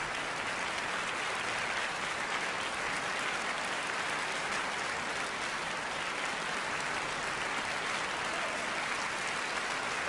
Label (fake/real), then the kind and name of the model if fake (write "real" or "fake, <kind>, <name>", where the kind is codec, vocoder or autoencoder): real